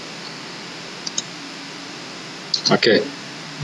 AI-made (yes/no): no